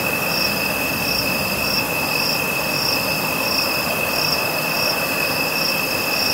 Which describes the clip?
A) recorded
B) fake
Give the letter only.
A